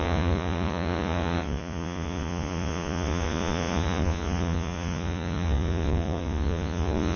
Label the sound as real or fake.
fake